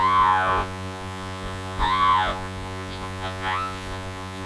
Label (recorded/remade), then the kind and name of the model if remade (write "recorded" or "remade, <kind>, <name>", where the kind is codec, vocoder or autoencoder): remade, vocoder, Vocos